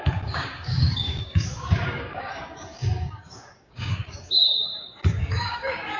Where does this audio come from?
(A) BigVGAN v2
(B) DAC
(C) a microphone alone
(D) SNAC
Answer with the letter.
B